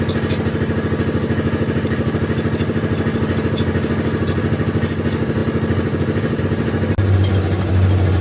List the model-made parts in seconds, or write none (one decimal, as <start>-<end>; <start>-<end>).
none